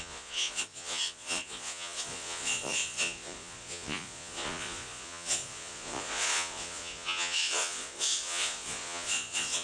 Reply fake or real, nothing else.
fake